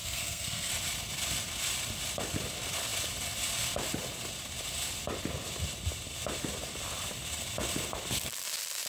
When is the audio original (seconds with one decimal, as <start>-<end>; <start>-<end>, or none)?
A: 0.7-8.9